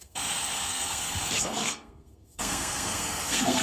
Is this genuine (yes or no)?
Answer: no